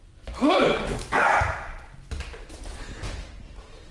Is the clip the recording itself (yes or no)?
yes